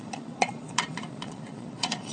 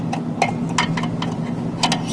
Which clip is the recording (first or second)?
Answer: second